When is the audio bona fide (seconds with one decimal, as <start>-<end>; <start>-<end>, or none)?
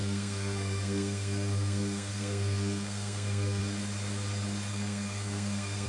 3.6-4.7